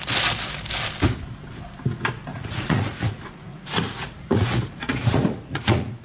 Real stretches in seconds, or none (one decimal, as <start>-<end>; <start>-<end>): 0.0-2.3